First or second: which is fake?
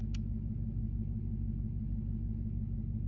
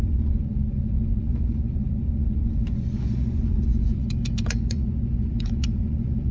second